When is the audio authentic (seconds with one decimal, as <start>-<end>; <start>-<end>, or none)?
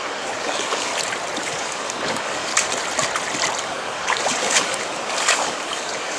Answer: 0.9-1.4; 2.5-3.6